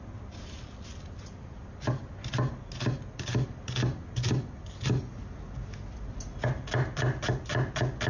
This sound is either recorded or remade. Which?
recorded